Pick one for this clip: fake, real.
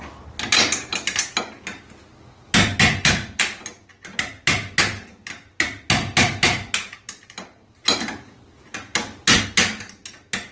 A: real